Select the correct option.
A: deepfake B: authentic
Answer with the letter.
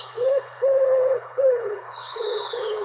A